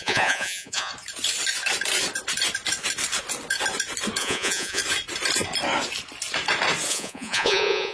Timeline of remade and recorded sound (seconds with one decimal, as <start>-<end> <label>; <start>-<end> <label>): 0.0-0.9 remade; 0.9-4.2 recorded; 4.2-4.8 remade; 4.8-6.9 recorded; 6.9-7.9 remade